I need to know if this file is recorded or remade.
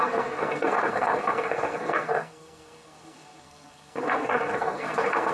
remade